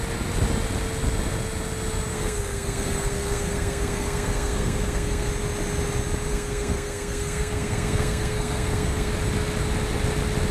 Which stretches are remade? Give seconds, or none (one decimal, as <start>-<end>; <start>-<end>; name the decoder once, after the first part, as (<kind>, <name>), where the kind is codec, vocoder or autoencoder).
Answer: 2.1-5.3 (codec, SNAC); 6.3-9.1